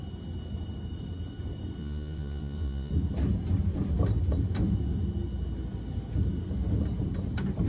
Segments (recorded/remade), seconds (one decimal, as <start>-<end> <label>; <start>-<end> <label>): 0.0-1.8 recorded; 1.8-2.9 remade; 2.9-7.7 recorded